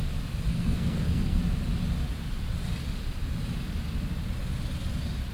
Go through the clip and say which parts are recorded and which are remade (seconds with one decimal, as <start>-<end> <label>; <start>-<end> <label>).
0.0-0.5 recorded; 0.5-1.4 remade; 1.4-5.3 recorded